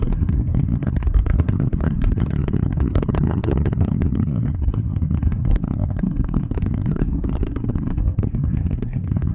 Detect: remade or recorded remade